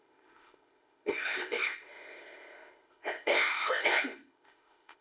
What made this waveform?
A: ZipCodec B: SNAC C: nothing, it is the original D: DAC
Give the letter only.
A